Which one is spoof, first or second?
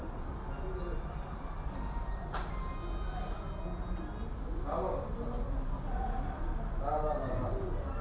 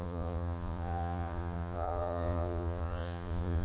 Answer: second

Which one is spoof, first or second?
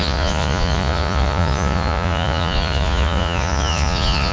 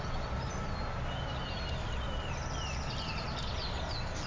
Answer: first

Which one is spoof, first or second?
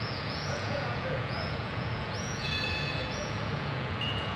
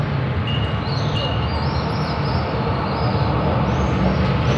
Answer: first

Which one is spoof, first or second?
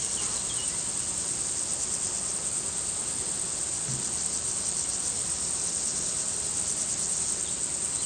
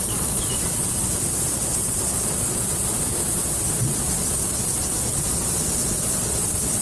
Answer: second